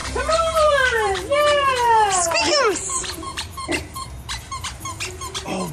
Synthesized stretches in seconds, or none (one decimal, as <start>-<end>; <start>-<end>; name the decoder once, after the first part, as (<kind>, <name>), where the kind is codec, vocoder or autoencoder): 0.0-3.4 (vocoder, BigVGAN v2)